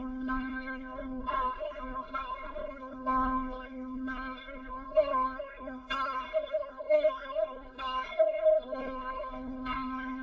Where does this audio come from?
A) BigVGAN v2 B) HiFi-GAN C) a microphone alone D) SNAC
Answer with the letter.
D